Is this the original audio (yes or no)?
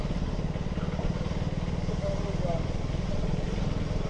yes